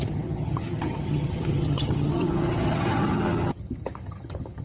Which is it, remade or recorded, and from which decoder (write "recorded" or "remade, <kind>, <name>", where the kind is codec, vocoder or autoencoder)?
remade, vocoder, HiFi-GAN